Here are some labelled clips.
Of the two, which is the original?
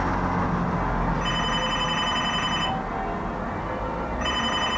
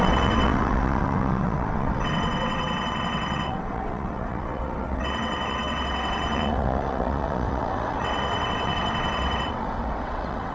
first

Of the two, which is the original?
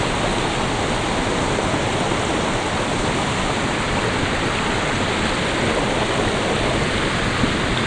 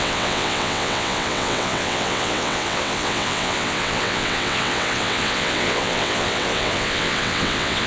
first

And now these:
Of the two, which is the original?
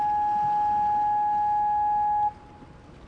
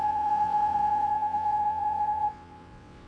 first